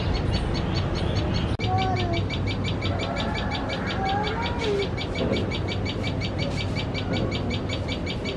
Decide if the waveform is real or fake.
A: real